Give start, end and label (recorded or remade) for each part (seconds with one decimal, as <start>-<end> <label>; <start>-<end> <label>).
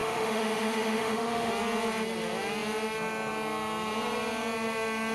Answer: 0.0-1.5 remade; 1.5-5.1 recorded